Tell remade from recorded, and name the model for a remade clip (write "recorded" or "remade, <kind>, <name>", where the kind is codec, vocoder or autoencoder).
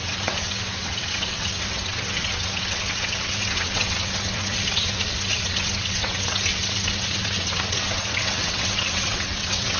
remade, vocoder, WaveNeXt